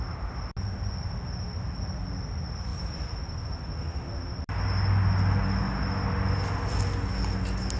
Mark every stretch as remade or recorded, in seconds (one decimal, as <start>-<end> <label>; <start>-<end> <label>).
0.0-7.8 recorded